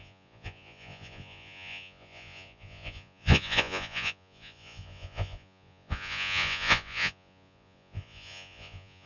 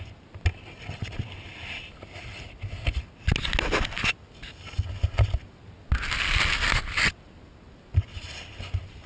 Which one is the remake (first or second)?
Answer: first